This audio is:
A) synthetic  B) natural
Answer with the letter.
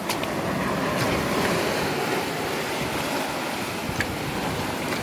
B